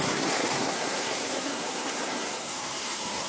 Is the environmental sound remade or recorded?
remade